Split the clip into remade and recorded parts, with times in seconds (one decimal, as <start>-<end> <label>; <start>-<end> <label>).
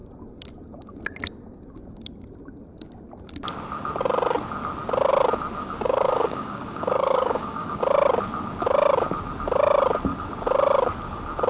0.0-5.6 recorded; 5.6-7.8 remade; 7.8-11.5 recorded